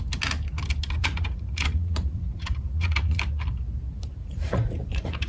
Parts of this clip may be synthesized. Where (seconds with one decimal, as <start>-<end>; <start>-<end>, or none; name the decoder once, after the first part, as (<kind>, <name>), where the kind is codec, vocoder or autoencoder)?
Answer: 1.0-3.2 (vocoder, Vocos); 4.2-5.3